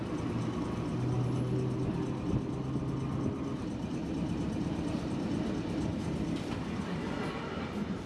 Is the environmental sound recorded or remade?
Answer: recorded